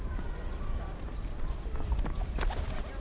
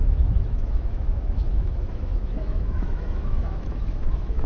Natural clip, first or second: first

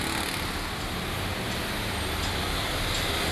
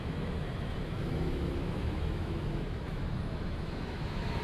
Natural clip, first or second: first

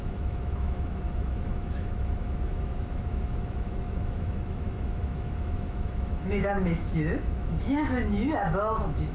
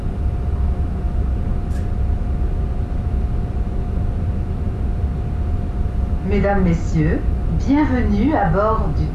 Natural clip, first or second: second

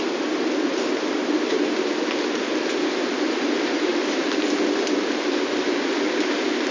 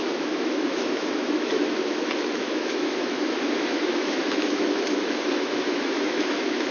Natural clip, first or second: first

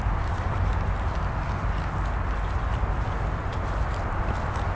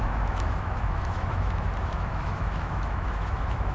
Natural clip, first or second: first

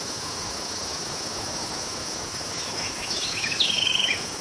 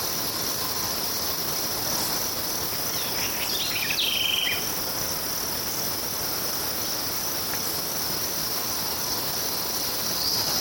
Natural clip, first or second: second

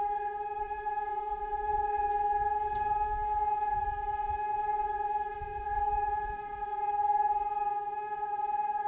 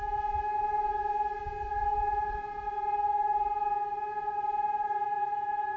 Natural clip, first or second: second